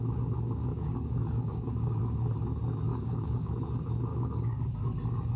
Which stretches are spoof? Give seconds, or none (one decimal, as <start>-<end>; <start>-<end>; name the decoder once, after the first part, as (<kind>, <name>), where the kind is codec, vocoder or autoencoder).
0.7-2.0 (codec, DAC); 2.9-3.5; 4.1-4.6